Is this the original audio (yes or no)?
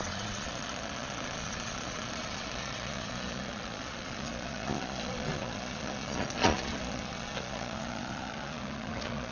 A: no